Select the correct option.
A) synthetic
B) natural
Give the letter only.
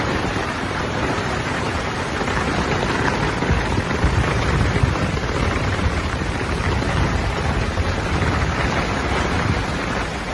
A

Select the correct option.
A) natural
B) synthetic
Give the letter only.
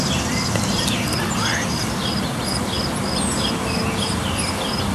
A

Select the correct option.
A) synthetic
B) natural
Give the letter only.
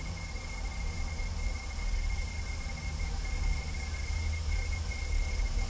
A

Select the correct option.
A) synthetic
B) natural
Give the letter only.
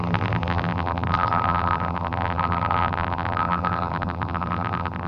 A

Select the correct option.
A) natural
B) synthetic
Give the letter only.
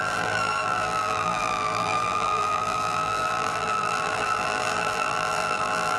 B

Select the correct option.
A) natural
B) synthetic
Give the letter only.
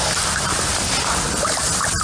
A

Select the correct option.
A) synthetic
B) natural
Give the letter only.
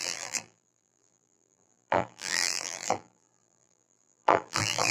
A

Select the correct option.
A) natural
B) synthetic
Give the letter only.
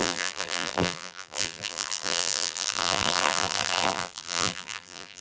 B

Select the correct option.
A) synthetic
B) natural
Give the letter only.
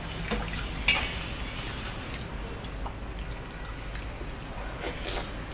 B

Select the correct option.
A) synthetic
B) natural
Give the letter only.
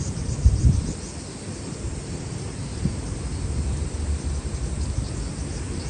A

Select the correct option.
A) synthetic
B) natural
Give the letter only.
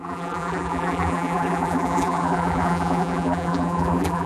A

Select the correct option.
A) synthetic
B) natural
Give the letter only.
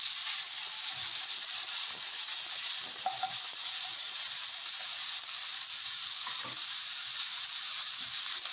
A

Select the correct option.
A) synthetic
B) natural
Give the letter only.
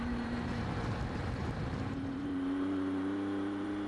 A